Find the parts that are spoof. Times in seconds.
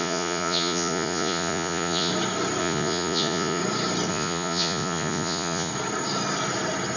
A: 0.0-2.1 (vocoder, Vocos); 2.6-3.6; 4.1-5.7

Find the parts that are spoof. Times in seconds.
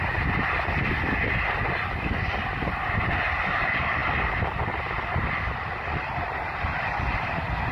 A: none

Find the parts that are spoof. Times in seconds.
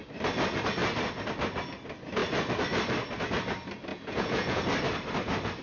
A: 3.9-4.6 (vocoder, Vocos)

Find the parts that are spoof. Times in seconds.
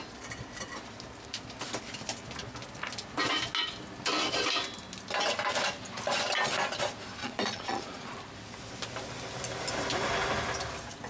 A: 7.2-8.2 (vocoder, Vocos)